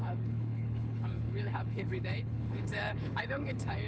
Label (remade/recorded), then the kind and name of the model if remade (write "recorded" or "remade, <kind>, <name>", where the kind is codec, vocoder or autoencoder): remade, codec, HILCodec